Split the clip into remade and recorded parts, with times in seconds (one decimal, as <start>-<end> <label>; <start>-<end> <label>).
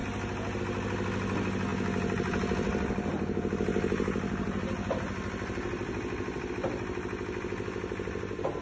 0.0-8.6 recorded